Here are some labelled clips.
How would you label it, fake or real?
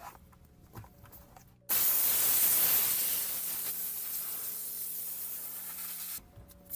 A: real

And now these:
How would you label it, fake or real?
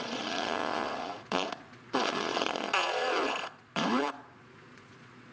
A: fake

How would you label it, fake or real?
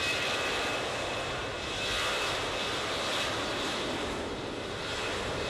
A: fake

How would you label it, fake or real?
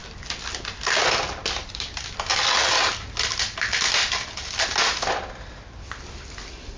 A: real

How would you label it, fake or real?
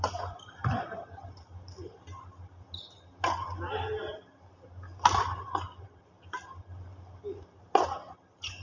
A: real